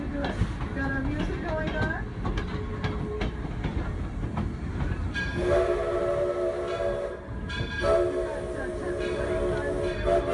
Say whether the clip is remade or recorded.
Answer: recorded